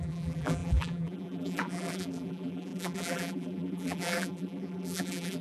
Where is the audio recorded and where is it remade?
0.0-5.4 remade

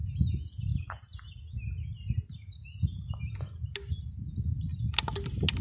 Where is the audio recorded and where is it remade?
0.0-5.6 recorded